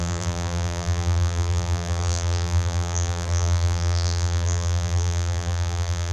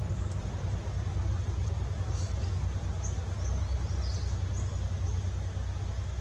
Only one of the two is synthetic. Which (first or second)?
first